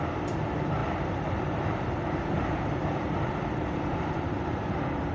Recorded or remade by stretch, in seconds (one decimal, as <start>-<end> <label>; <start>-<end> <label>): 0.0-5.1 recorded